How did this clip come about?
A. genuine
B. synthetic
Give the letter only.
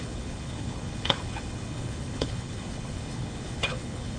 B